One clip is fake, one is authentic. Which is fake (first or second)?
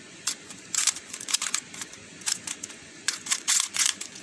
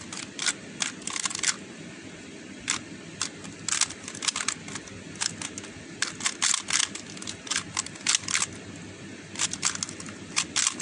first